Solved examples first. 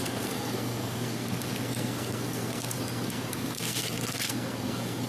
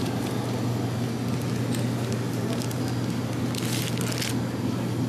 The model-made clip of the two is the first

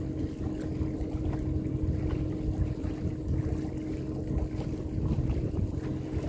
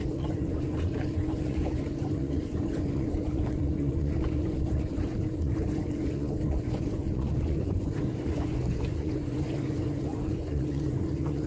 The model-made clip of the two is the second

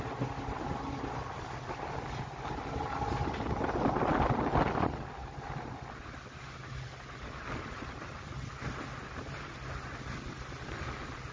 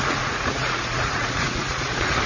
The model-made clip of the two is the second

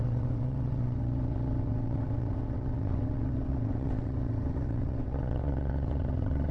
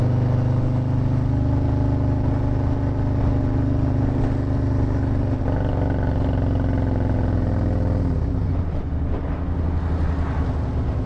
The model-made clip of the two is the first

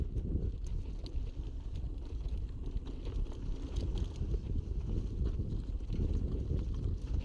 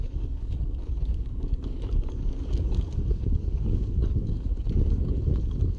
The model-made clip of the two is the second